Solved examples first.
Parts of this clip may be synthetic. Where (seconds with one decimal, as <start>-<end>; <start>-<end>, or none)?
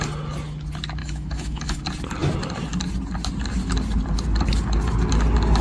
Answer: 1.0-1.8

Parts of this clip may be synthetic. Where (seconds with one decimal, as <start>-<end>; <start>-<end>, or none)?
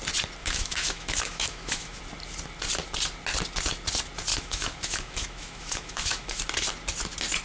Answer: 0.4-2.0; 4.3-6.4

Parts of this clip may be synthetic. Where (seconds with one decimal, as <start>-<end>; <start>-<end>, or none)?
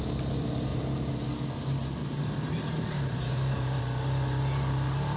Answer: 0.7-3.8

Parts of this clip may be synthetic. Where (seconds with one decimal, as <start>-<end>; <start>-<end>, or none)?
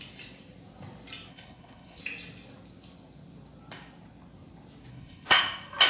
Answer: 1.3-2.0; 4.9-5.4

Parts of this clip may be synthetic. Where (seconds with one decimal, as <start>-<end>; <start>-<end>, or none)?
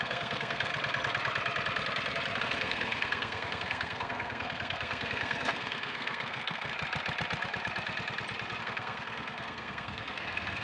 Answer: 0.0-0.7; 2.4-6.7; 8.6-10.6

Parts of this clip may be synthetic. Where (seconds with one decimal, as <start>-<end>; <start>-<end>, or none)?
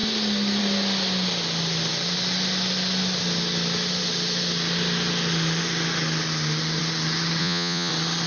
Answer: 7.4-7.9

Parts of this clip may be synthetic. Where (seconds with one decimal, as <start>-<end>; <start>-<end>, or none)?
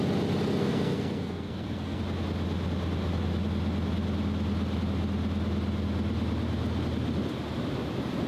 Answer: 0.6-2.0